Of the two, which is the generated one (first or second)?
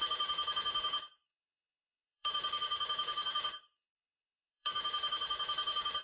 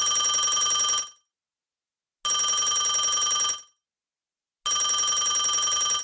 first